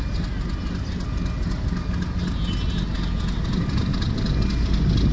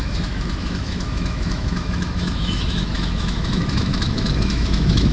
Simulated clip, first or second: second